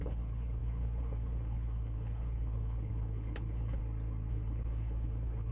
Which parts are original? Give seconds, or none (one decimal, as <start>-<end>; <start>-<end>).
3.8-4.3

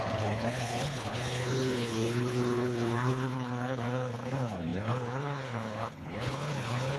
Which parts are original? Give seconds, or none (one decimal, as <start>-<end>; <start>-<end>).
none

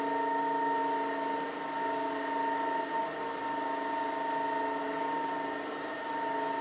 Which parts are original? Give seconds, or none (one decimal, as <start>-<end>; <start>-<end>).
0.0-6.6

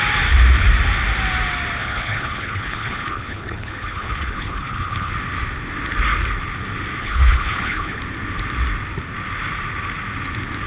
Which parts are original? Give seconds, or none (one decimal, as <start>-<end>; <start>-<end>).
0.0-1.8; 5.1-7.0; 8.0-10.7